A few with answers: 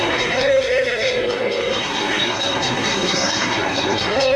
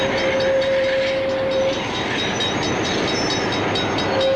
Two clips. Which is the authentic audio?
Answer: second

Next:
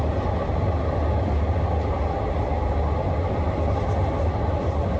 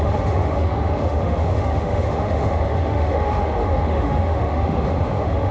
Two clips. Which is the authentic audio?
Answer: first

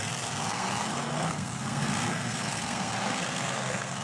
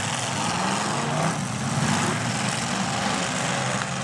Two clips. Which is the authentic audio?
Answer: second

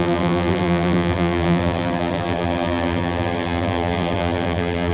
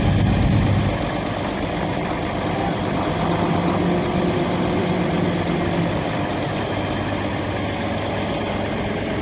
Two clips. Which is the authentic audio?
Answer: second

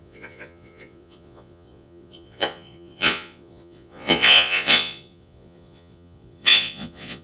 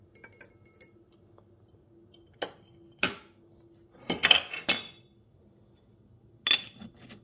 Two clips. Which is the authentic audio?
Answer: second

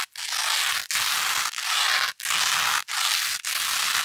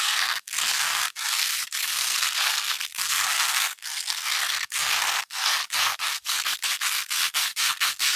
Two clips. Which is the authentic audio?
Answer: first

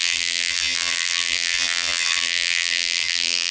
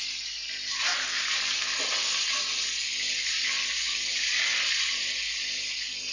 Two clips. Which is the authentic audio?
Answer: second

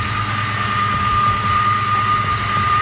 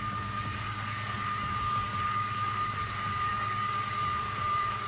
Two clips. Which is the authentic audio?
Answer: first